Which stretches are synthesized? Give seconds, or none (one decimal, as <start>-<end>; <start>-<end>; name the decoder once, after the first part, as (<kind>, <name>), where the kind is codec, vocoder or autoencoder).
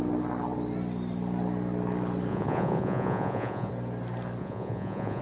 2.3-3.7 (vocoder, Vocos); 4.4-5.2